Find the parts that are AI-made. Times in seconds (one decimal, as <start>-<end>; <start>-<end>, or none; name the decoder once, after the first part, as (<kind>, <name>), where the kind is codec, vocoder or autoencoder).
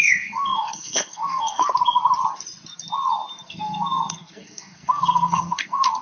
0.0-1.6 (codec, SNAC); 3.5-6.0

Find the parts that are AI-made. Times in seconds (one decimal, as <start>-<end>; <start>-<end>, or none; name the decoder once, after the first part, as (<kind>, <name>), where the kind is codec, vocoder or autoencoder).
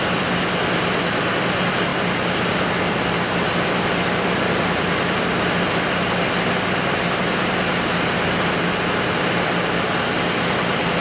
none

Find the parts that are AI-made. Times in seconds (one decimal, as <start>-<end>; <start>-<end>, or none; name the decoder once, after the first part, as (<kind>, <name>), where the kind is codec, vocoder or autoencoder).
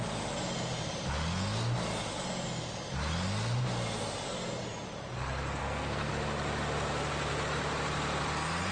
5.6-6.1 (codec, SNAC)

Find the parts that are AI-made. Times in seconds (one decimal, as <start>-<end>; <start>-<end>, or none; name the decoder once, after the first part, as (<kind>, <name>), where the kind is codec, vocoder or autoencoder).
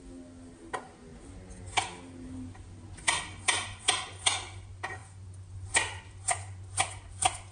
none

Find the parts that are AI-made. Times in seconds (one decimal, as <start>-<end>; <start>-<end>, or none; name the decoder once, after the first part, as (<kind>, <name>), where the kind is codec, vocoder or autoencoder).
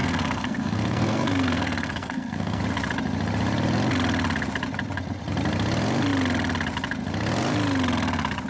0.0-2.6 (codec, SNAC)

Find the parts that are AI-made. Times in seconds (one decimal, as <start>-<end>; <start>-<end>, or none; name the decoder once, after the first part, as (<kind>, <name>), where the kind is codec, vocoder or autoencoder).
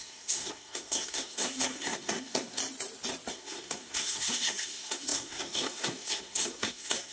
0.0-2.6 (codec, SNAC); 3.3-7.1